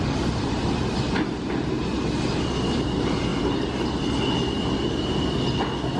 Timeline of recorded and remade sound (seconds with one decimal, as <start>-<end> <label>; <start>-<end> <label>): 0.0-6.0 recorded